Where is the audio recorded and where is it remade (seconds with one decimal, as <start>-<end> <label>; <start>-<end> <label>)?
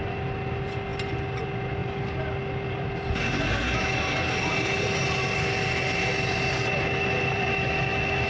0.0-7.5 recorded; 7.5-8.3 remade